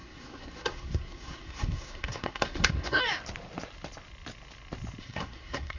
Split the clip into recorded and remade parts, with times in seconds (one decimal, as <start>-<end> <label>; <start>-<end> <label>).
0.0-3.0 remade; 3.0-5.0 recorded; 5.0-5.8 remade